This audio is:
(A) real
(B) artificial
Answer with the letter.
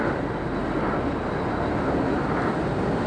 A